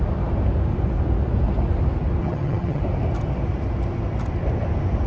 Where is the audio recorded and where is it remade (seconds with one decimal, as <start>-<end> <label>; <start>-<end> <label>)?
0.0-2.2 recorded; 2.2-2.8 remade; 2.8-5.1 recorded